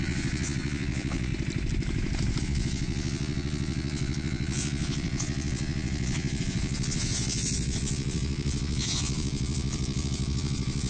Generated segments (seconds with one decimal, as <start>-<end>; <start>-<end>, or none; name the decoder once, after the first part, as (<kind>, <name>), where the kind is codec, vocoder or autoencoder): 0.0-1.3 (vocoder, Vocos); 2.4-10.9